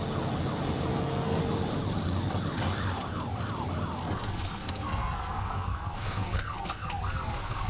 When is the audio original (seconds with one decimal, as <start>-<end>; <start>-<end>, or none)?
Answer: 0.0-0.9; 1.4-4.0